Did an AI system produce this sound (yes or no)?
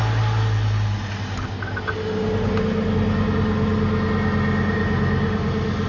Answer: no